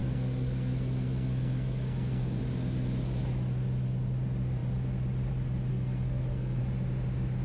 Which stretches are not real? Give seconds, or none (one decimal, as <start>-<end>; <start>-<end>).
0.0-2.4; 5.7-6.6